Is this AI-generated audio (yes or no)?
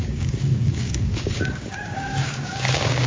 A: yes